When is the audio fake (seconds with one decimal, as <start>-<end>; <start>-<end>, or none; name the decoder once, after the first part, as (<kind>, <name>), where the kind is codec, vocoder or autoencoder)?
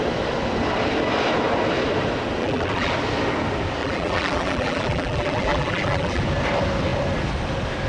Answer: 2.4-2.9 (vocoder, BigVGAN v2); 3.8-6.2